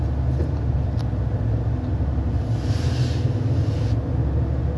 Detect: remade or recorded recorded